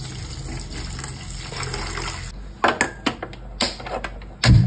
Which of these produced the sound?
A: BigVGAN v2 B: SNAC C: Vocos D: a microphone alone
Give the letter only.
D